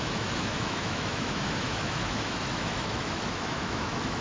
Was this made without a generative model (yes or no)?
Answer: no